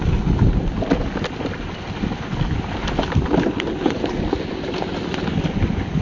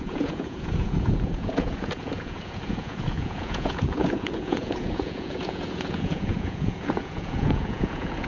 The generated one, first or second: second